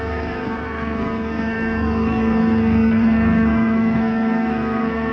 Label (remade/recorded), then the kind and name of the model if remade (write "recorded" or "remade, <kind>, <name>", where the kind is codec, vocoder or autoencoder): remade, codec, SNAC